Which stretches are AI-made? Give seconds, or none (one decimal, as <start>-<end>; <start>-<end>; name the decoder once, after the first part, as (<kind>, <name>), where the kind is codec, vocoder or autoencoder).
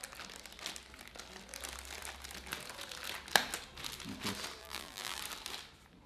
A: 4.6-5.2 (vocoder, BigVGAN v2)